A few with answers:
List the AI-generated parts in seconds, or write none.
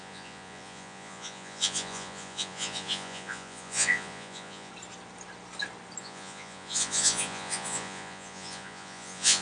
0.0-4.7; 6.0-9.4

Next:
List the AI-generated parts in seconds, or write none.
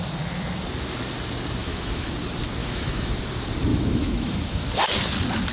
1.6-2.1; 2.6-3.1; 3.7-4.6